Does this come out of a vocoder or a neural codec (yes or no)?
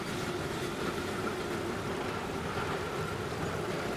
no